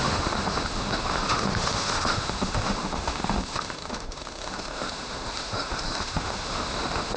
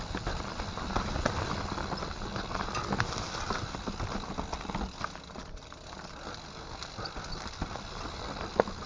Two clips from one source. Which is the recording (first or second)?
second